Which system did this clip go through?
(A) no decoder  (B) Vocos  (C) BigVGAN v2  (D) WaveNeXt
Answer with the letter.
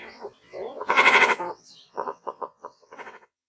D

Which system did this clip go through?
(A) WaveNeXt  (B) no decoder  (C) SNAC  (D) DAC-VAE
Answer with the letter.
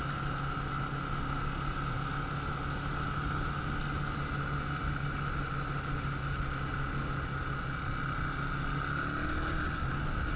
B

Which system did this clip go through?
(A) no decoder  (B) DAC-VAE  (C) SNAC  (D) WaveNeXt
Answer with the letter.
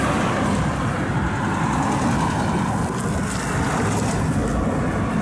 A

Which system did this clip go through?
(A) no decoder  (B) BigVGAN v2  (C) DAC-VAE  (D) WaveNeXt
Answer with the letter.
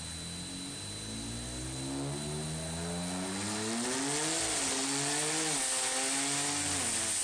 A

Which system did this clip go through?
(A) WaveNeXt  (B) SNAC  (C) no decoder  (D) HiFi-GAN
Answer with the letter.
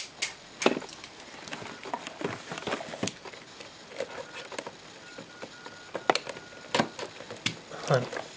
C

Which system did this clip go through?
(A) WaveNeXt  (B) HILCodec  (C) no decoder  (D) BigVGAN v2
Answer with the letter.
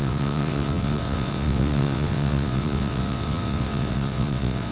A